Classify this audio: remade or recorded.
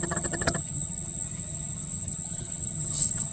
remade